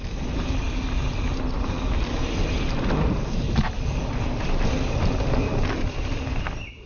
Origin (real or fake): real